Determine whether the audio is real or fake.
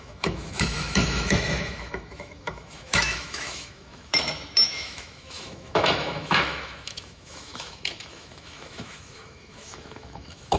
fake